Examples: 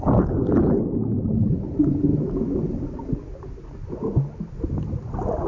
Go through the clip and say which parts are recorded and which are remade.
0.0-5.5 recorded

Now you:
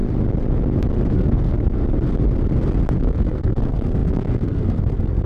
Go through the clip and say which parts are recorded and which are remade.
0.0-1.1 recorded; 1.1-1.8 remade; 1.8-3.0 recorded; 3.0-5.3 remade

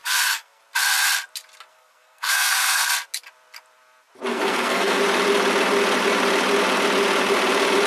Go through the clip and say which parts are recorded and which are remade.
0.0-0.6 remade; 0.6-1.7 recorded; 1.7-2.9 remade; 2.9-4.3 recorded; 4.3-5.0 remade; 5.0-7.9 recorded

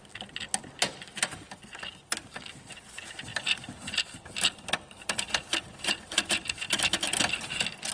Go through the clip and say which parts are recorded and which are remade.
0.0-7.9 recorded

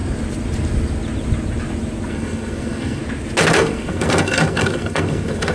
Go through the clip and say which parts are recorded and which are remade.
0.0-2.1 recorded; 2.1-3.0 remade; 3.0-3.5 recorded; 3.5-5.5 remade

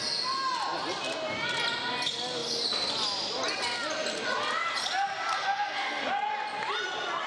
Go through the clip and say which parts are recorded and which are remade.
0.0-5.3 recorded; 5.3-6.0 remade; 6.0-7.3 recorded